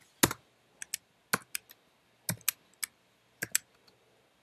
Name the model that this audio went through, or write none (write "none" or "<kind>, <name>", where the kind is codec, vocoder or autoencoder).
none